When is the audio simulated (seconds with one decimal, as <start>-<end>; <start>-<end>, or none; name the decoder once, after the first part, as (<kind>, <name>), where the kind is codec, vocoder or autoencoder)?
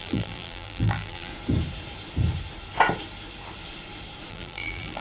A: 0.0-1.3 (vocoder, BigVGAN v2); 4.3-5.0